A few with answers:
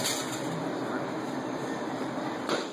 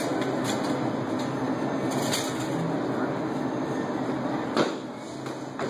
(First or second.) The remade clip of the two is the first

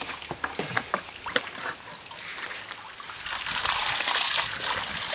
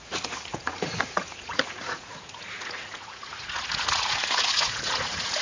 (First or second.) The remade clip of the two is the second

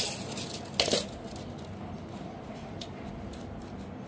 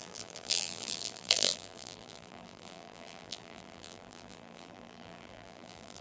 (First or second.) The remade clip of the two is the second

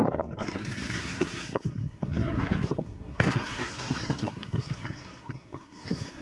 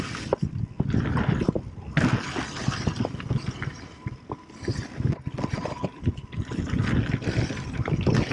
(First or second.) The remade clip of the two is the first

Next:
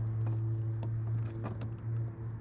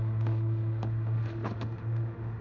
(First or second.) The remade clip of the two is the second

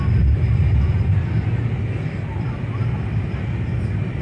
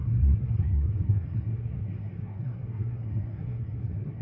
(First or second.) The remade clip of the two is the second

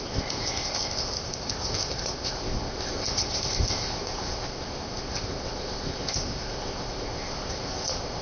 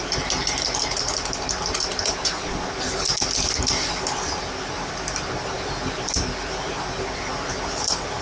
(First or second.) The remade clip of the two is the first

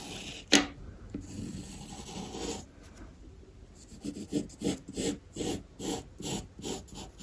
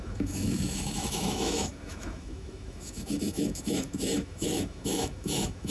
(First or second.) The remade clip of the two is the second